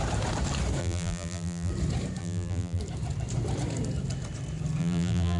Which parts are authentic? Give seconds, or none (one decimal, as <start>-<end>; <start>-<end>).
0.0-0.8; 1.7-2.2; 2.8-4.8